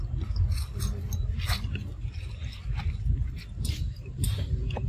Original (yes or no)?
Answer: yes